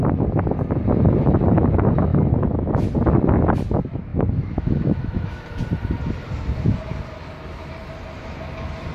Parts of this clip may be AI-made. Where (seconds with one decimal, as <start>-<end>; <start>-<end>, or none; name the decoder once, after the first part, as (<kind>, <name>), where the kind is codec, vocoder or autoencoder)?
4.1-5.3 (autoencoder, DAC-VAE)